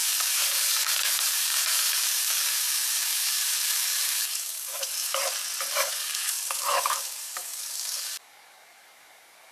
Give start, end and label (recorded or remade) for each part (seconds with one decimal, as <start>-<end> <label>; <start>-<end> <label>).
0.0-5.2 remade; 5.2-5.7 recorded; 5.7-9.5 remade